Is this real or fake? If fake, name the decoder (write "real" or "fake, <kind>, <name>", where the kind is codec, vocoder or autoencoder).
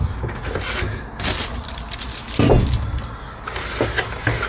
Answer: real